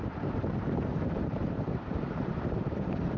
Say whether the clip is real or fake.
fake